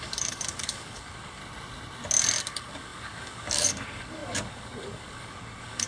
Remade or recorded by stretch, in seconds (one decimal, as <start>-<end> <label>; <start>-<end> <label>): 0.0-1.4 remade; 1.4-2.4 recorded; 2.4-5.9 remade